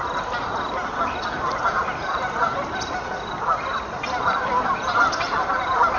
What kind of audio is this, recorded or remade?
recorded